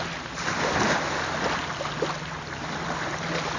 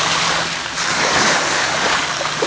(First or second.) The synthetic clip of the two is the second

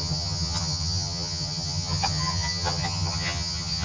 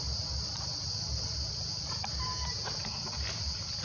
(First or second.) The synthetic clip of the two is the first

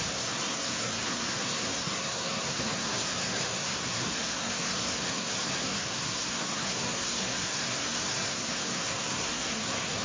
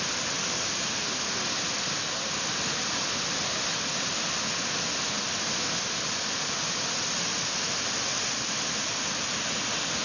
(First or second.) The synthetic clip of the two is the first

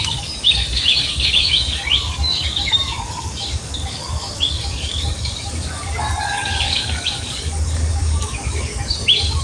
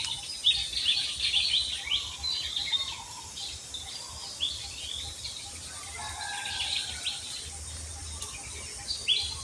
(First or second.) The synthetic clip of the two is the first